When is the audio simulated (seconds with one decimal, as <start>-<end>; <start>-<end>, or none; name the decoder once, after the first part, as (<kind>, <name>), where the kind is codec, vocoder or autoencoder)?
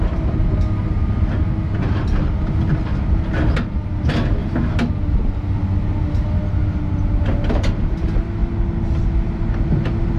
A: none